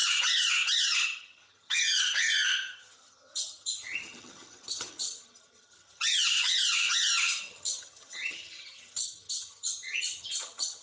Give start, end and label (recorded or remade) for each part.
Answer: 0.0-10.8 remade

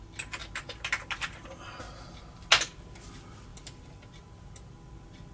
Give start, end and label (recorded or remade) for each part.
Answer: 0.0-5.3 recorded